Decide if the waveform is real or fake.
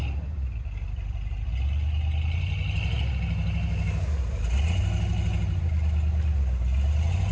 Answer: real